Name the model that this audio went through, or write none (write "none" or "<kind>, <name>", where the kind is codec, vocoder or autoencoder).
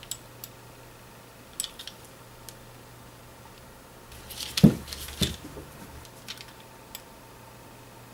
none